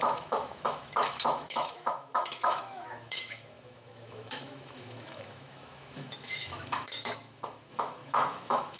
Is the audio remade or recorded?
remade